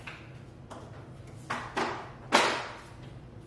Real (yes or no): yes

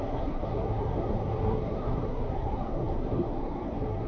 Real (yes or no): no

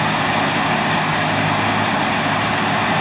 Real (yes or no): yes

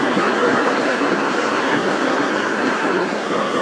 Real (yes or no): no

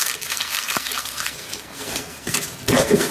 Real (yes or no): no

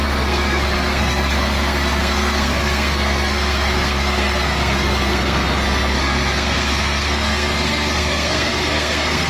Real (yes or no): no